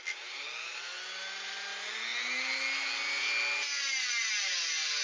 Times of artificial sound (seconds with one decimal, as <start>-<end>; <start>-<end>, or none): none